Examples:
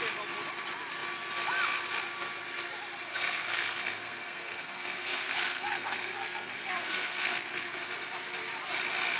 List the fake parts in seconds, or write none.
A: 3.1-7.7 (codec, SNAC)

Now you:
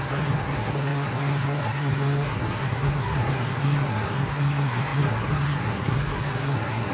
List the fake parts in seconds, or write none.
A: 0.0-6.9 (codec, SNAC)

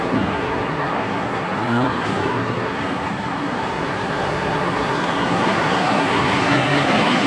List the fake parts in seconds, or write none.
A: 0.0-7.3 (codec, SNAC)

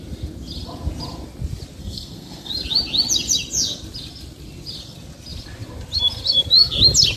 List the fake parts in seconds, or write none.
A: 1.8-2.5 (codec, SNAC)

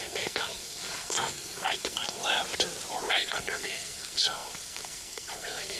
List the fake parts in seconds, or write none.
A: 0.0-2.2 (codec, SNAC); 3.1-5.8